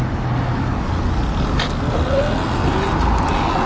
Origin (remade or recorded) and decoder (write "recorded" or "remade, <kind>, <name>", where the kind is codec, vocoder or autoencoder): recorded